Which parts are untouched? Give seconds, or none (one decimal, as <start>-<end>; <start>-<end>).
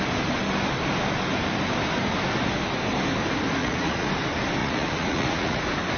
0.0-3.6; 4.1-4.6; 5.6-6.0